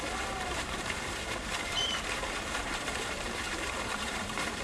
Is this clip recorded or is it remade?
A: remade